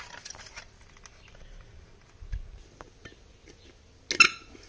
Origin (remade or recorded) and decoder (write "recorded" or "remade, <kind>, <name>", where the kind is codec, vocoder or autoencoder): recorded